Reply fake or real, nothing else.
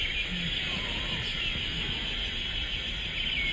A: real